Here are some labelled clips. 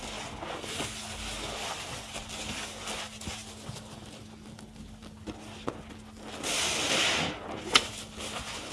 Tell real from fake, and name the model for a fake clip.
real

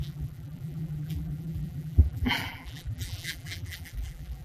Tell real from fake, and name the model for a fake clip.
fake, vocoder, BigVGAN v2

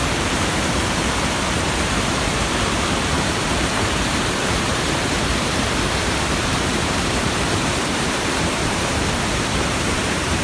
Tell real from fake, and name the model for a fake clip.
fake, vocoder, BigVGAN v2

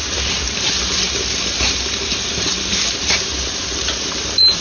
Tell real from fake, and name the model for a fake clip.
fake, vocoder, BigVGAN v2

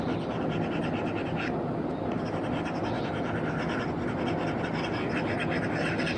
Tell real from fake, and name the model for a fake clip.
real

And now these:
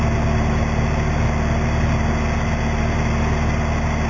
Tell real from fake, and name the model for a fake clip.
real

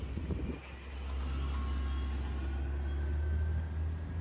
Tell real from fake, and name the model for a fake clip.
real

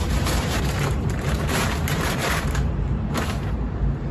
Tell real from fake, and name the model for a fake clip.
fake, vocoder, BigVGAN v2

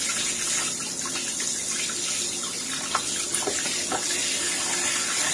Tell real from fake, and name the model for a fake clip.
real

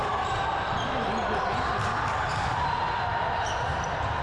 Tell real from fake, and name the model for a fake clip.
real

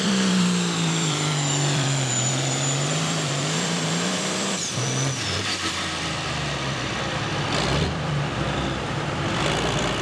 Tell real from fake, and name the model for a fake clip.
fake, vocoder, BigVGAN v2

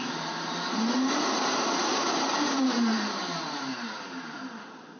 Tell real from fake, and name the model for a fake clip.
fake, vocoder, BigVGAN v2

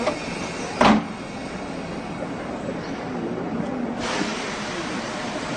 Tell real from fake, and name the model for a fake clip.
real